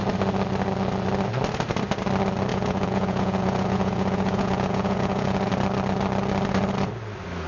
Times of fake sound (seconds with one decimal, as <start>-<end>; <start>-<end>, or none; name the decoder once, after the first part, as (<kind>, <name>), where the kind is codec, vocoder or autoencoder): 2.5-5.5 (vocoder, Vocos)